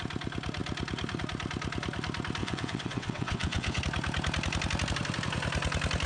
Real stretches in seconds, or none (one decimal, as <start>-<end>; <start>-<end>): 0.0-2.4; 3.8-6.1